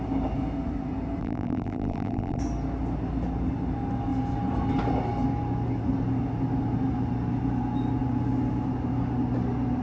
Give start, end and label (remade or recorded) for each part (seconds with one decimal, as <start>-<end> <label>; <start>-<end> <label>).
0.0-1.2 recorded; 1.2-2.4 remade; 2.4-9.8 recorded